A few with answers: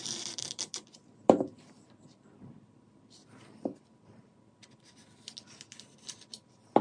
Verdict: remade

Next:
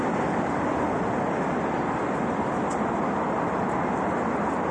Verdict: recorded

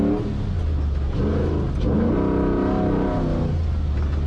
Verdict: recorded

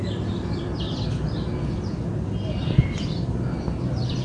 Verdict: recorded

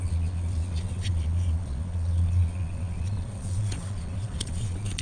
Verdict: remade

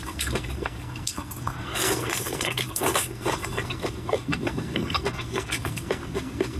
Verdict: remade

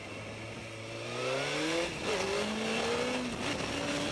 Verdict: recorded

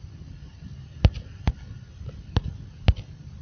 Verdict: recorded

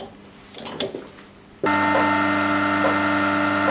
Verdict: recorded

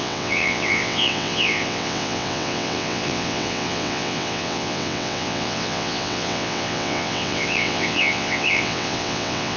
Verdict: remade